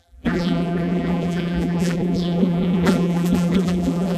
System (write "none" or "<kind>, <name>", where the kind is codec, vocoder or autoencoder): vocoder, BigVGAN v2